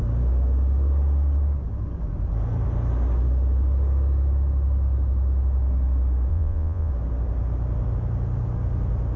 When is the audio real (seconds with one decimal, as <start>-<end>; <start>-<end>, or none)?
0.0-6.3; 6.9-9.2

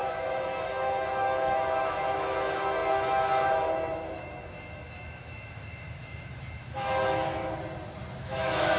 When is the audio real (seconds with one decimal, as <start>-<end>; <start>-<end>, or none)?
7.4-8.2

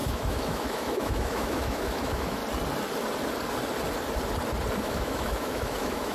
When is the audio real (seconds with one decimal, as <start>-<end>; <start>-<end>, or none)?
2.4-4.8

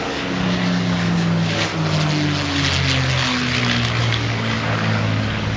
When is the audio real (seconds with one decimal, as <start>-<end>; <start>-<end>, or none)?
1.7-4.0

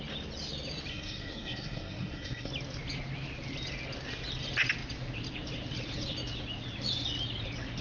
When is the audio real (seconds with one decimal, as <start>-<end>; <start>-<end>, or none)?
0.0-0.9; 2.5-7.8